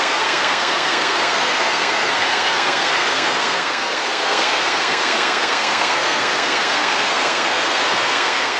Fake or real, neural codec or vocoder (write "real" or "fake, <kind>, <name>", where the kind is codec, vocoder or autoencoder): fake, codec, SNAC